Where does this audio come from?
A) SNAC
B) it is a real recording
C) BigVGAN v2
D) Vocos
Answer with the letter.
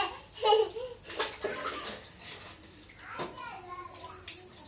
B